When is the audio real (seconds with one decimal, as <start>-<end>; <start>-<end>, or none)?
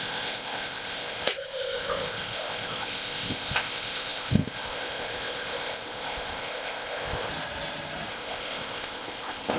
7.3-8.1